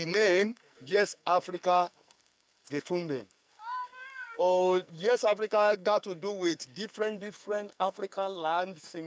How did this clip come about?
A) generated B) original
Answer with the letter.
A